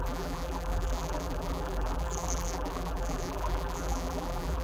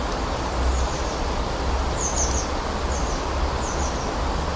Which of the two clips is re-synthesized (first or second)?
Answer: first